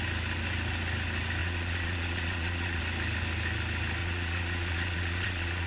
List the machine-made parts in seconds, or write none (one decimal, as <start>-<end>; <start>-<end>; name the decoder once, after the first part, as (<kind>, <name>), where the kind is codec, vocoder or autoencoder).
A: 1.4-2.8 (vocoder, Vocos); 4.0-5.7

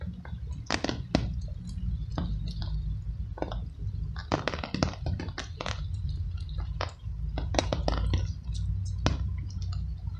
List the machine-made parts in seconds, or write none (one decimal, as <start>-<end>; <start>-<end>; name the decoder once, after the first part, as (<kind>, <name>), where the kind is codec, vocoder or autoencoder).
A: none

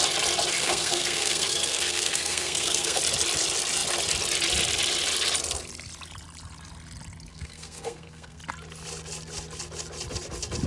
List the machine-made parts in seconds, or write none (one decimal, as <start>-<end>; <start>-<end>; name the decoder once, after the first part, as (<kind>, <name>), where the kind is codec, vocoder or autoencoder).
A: 0.6-3.0 (codec, SNAC); 7.3-8.4